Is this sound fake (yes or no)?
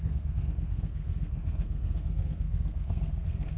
yes